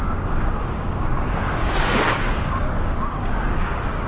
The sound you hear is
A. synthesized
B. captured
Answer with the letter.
A